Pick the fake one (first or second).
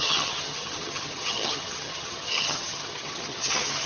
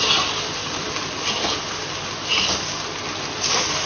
first